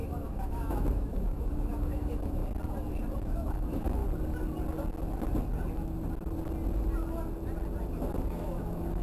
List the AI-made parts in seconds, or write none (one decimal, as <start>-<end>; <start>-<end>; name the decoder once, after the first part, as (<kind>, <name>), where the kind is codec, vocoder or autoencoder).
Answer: 0.0-2.4 (autoencoder, DAC-VAE); 3.2-4.0; 8.3-9.0